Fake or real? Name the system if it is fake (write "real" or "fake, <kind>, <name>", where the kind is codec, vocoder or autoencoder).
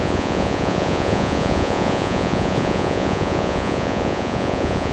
fake, vocoder, Vocos